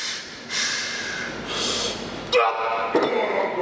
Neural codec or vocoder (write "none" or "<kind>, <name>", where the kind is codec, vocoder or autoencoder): none